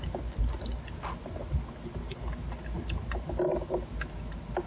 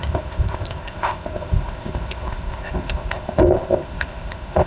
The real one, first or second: first